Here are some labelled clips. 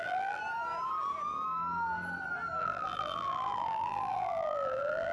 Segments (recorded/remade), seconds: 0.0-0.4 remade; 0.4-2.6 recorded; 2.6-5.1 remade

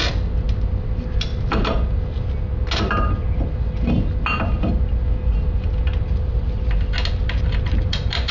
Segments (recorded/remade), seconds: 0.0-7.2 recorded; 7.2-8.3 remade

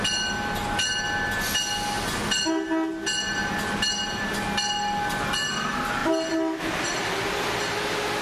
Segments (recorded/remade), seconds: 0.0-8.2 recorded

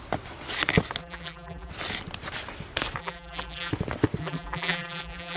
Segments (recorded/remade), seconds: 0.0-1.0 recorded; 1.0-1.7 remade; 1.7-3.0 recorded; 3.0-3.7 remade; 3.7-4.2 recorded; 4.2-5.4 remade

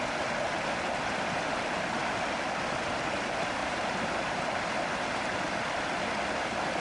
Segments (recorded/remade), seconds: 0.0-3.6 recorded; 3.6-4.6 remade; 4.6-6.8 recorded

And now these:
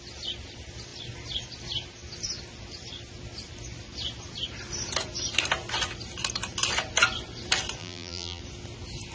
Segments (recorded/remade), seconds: 0.0-7.8 recorded; 7.8-8.4 remade; 8.4-9.1 recorded

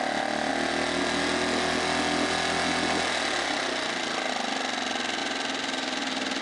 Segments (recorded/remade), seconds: 0.0-5.2 recorded; 5.2-6.4 remade